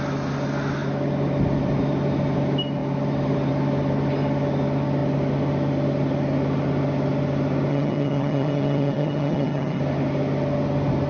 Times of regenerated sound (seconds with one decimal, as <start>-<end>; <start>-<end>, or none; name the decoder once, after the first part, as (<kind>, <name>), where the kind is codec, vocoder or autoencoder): 7.7-9.8 (vocoder, HiFi-GAN)